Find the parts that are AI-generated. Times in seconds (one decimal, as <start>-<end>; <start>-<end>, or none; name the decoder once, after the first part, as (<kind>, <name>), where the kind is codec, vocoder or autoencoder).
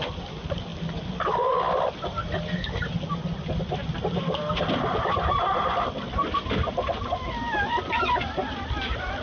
5.5-6.8 (vocoder, BigVGAN v2)